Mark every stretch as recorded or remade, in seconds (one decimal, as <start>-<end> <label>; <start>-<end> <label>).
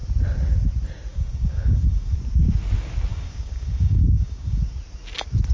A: 0.0-1.1 recorded; 1.1-2.2 remade; 2.2-3.1 recorded; 3.1-4.7 remade; 4.7-5.5 recorded